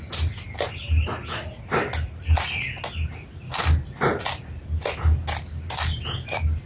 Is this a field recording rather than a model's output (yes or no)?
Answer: yes